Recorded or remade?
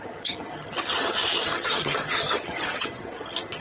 remade